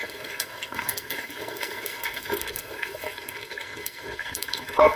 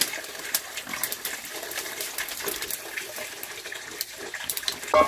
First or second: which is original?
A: second